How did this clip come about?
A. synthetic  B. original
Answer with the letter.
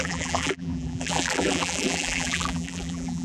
A